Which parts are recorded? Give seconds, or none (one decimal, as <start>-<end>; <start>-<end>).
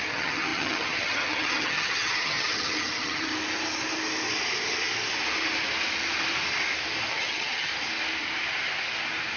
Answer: 3.3-7.1; 7.7-9.4